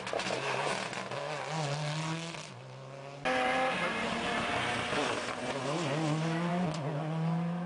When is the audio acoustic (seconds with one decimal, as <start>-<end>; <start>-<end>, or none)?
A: 0.0-7.7